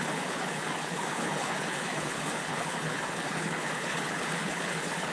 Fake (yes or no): yes